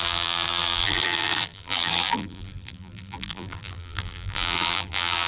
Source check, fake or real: fake